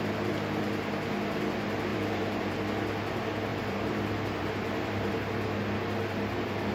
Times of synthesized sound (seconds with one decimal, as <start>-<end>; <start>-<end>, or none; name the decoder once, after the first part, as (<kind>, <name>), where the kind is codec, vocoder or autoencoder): 1.9-2.6 (vocoder, BigVGAN v2); 3.5-5.1